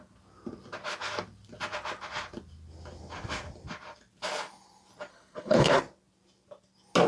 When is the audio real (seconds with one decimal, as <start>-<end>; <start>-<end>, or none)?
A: 0.0-5.1; 5.8-7.1

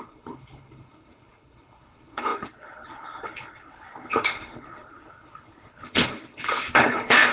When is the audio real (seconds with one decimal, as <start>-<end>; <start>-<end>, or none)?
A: none

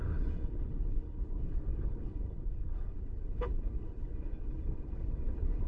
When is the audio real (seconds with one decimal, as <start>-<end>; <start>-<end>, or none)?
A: none

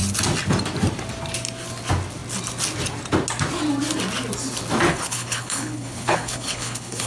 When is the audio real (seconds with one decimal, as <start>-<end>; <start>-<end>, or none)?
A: 0.0-4.9

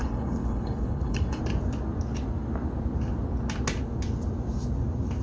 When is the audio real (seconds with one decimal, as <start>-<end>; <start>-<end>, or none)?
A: 1.4-5.2

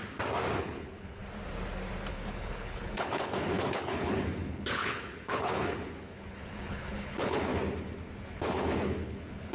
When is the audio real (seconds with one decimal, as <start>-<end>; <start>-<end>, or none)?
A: 0.0-0.6; 1.2-2.1; 7.5-8.3